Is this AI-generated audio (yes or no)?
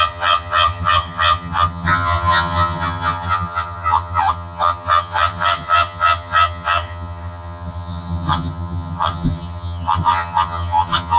yes